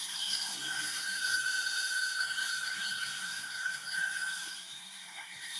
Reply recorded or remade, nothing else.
remade